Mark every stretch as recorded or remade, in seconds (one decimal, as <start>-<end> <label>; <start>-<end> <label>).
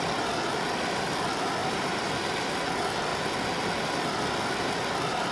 0.0-1.6 recorded; 1.6-2.1 remade; 2.1-5.3 recorded